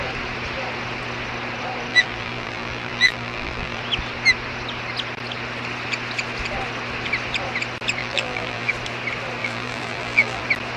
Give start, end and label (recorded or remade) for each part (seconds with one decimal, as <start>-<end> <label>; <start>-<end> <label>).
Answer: 0.0-1.9 recorded; 1.9-3.8 remade; 3.8-8.0 recorded; 8.0-8.7 remade; 8.7-9.4 recorded; 9.4-10.4 remade; 10.4-10.8 recorded